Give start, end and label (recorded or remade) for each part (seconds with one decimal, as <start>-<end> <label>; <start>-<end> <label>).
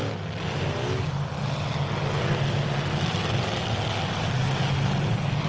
0.0-5.5 recorded